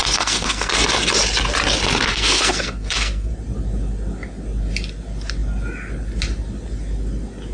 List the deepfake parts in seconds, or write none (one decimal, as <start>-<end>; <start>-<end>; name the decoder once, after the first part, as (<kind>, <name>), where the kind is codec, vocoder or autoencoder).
0.0-0.7 (codec, SNAC); 2.1-3.3